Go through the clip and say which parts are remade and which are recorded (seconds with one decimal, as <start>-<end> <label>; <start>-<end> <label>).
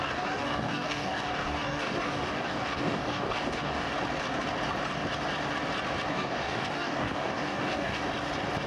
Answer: 0.0-3.9 remade; 3.9-6.1 recorded; 6.1-8.0 remade; 8.0-8.7 recorded